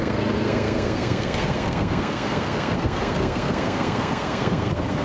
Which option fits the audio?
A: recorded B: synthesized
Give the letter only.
B